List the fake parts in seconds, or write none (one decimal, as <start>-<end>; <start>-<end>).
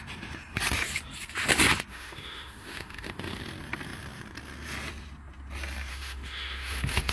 1.9-3.4; 5.9-7.1